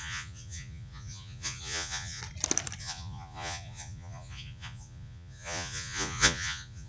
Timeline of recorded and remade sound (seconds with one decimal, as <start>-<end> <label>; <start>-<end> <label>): 0.0-2.2 remade; 2.2-2.8 recorded; 2.8-6.9 remade